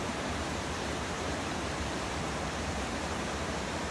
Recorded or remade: remade